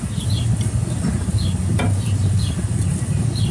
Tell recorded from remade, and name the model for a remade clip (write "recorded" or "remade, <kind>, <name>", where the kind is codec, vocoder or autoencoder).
recorded